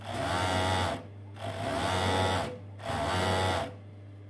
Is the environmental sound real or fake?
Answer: real